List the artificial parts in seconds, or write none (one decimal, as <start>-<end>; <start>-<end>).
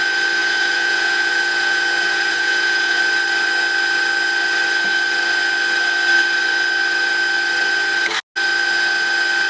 0.4-3.0